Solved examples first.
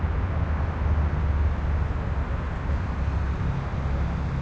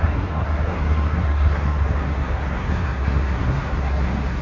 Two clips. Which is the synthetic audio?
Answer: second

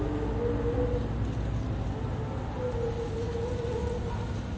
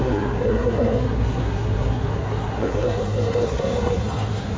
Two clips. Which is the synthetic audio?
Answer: second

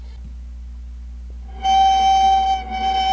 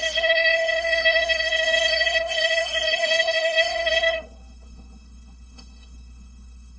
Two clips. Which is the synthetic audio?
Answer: second